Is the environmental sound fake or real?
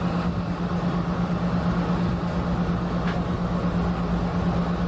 real